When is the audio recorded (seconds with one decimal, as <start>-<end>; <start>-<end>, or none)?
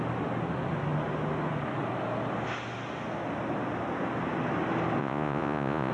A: 0.0-5.0